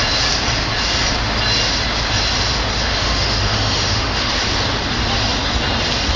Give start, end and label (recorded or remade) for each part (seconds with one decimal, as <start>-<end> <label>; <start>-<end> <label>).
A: 0.0-2.8 recorded; 2.8-4.3 remade; 4.3-6.2 recorded